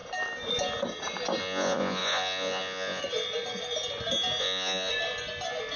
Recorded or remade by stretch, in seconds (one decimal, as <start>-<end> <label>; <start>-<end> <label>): 0.0-1.4 recorded; 1.4-3.0 remade; 3.0-4.4 recorded; 4.4-4.9 remade; 4.9-5.8 recorded